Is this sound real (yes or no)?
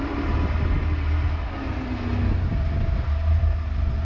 yes